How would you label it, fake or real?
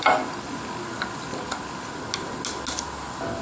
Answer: real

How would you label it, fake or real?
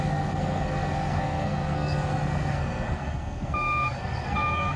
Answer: fake